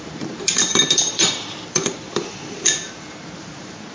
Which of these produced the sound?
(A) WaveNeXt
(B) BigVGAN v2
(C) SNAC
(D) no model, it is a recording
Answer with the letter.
B